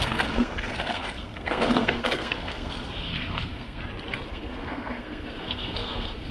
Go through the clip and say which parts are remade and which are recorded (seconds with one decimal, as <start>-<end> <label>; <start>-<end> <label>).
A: 0.0-3.8 remade; 3.8-4.3 recorded; 4.3-6.3 remade